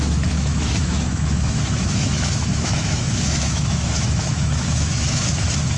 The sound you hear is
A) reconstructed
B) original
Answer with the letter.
A